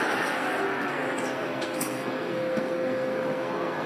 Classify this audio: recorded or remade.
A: remade